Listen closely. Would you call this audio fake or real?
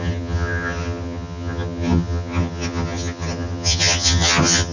fake